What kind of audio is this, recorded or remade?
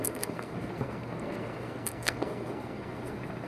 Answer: remade